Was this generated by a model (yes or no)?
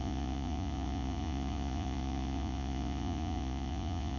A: yes